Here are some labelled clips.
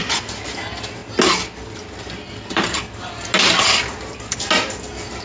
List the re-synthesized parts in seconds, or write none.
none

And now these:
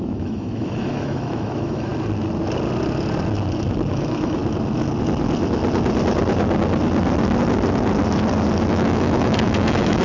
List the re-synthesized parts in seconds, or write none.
0.0-1.9 (autoencoder, DAC-VAE); 3.9-4.4; 8.7-10.0

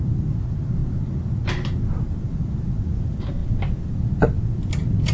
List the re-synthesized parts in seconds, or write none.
none

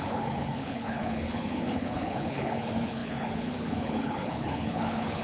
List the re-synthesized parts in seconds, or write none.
0.0-5.2 (codec, HILCodec)

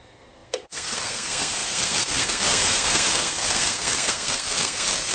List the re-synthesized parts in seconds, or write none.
0.0-5.1 (codec, SNAC)

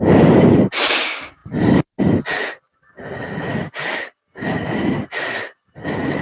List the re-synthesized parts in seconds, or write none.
none

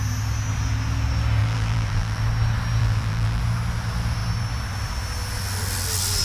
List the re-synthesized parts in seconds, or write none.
1.4-2.2 (vocoder, BigVGAN v2); 2.8-3.4